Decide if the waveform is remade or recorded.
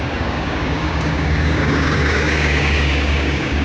remade